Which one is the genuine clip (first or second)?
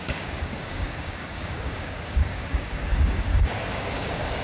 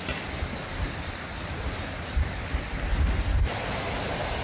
second